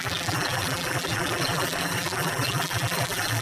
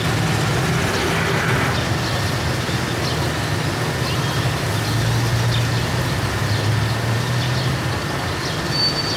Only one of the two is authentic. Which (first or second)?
second